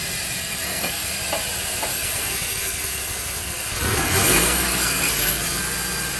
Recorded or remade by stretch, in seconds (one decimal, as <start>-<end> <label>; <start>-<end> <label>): 0.0-0.4 recorded; 0.4-1.1 remade; 1.1-1.9 recorded; 1.9-5.6 remade; 5.6-6.2 recorded